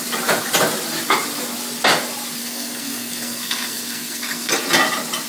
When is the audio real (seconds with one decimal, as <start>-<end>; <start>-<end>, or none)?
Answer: 0.0-2.4; 4.5-5.3